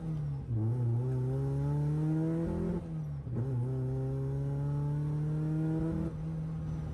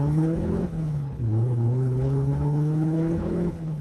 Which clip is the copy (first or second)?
second